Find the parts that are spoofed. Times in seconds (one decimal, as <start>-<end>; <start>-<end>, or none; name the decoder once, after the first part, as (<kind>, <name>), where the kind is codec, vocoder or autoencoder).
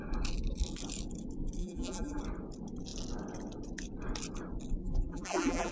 1.6-2.2 (vocoder, BigVGAN v2); 4.8-5.7